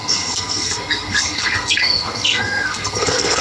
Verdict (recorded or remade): remade